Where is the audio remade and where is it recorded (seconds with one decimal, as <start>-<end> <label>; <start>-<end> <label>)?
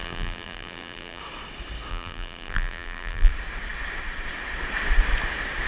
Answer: 0.0-1.2 remade; 1.2-1.9 recorded; 1.9-3.3 remade; 3.3-5.7 recorded